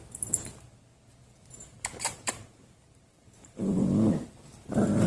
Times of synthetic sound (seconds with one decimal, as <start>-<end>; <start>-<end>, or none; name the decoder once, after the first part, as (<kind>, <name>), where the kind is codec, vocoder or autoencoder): 1.2-4.1 (vocoder, BigVGAN v2)